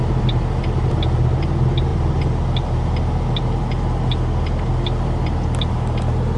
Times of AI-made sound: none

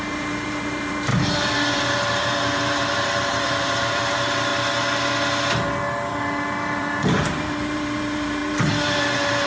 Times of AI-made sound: 0.0-4.5 (vocoder, BigVGAN v2); 6.1-9.5

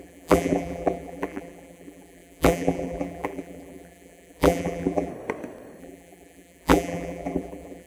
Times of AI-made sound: 0.0-5.1 (vocoder, BigVGAN v2); 5.8-7.9

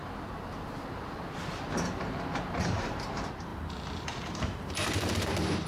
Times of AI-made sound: 0.0-5.7 (vocoder, BigVGAN v2)

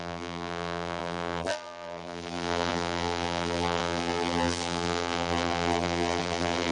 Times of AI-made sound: 0.0-6.7 (vocoder, BigVGAN v2)

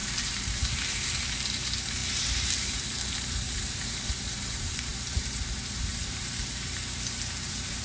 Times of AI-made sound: 0.0-7.8 (vocoder, BigVGAN v2)